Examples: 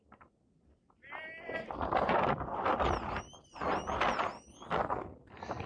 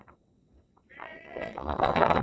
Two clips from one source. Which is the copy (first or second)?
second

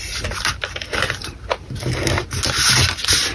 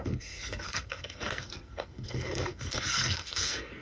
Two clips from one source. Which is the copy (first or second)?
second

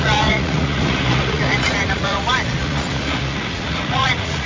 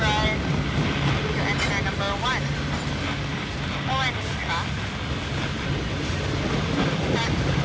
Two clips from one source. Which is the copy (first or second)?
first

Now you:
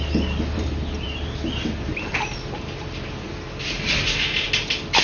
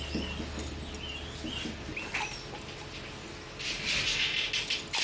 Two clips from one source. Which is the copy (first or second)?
first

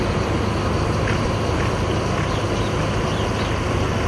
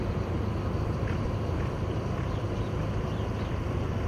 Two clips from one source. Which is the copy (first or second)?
second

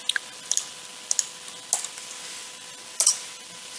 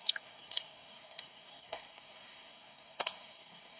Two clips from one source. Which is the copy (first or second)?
second